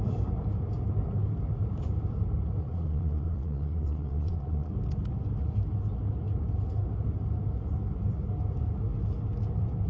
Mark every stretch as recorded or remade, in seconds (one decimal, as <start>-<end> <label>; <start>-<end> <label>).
0.0-2.6 recorded; 2.6-4.7 remade; 4.7-9.9 recorded